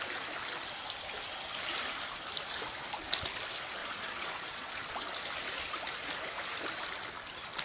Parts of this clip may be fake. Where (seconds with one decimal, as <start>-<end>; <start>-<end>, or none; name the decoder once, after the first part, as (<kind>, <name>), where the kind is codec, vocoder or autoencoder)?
3.8-4.7 (vocoder, Vocos)